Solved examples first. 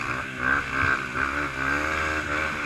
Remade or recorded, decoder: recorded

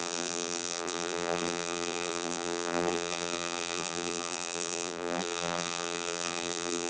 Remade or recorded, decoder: remade, vocoder, BigVGAN v2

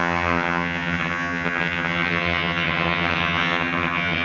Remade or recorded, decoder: remade, vocoder, HiFi-GAN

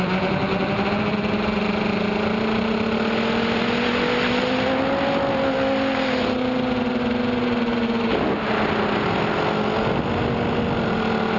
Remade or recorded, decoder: recorded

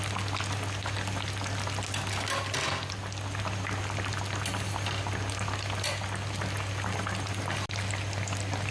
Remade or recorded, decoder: recorded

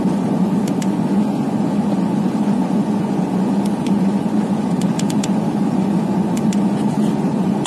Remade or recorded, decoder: remade, vocoder, Vocos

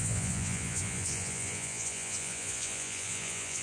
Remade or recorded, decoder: remade, vocoder, Vocos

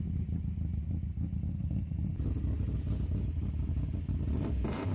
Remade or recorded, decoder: recorded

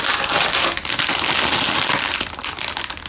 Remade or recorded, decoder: recorded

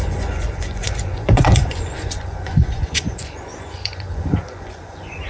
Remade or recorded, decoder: remade, vocoder, Vocos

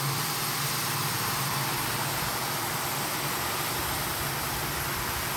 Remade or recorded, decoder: remade, vocoder, BigVGAN v2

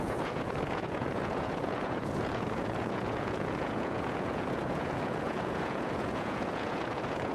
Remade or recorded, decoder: remade, vocoder, Vocos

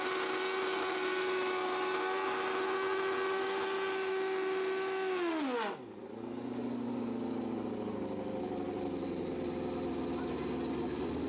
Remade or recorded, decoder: recorded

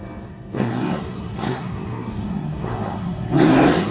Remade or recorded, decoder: remade, codec, SNAC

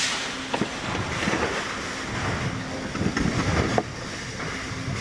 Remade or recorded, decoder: recorded